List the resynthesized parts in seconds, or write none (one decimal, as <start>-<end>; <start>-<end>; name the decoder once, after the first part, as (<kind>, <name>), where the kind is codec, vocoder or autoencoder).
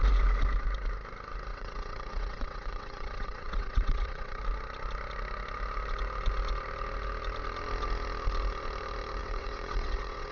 1.5-4.4 (vocoder, WaveNeXt); 9.2-10.3